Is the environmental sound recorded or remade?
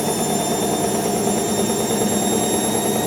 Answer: recorded